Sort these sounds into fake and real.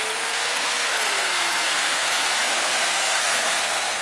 fake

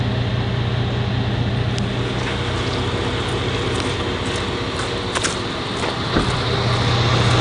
real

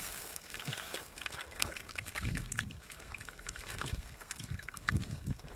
fake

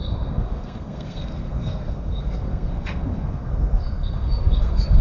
fake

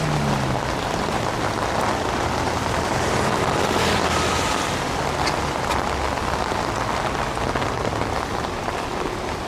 real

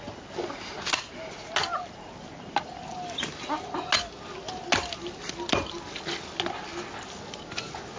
real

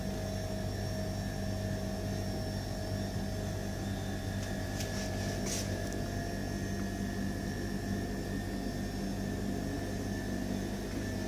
real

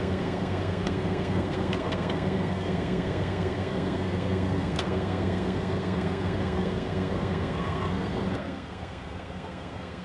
fake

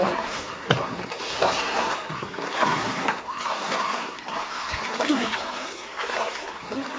fake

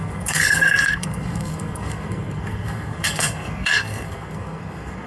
fake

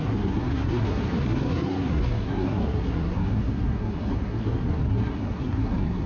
fake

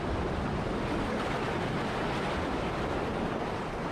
real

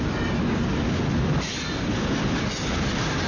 real